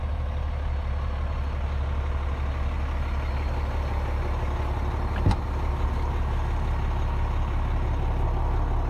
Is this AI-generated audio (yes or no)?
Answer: no